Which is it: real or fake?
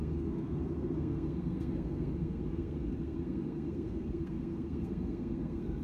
fake